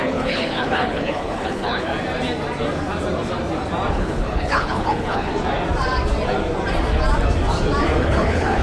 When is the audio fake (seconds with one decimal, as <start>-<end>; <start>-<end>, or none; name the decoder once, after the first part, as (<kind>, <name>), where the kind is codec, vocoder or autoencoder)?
0.0-1.9 (codec, HILCodec); 3.9-5.3; 8.0-8.6